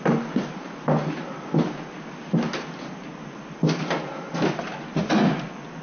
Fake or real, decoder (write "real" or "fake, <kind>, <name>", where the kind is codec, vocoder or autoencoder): real